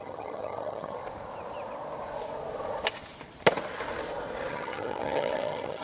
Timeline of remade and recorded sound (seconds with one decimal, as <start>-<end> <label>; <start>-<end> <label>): 0.0-1.0 remade; 1.0-4.5 recorded; 4.5-5.8 remade